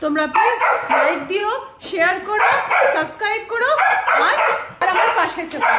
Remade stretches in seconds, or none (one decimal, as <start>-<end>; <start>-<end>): none